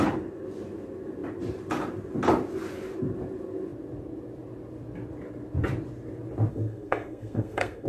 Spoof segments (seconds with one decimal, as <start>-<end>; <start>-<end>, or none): 6.5-7.9